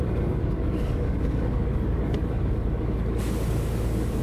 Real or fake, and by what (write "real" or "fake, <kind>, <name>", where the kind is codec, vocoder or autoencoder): fake, codec, DAC